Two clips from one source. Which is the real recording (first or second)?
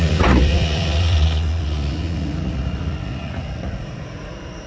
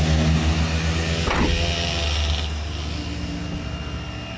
second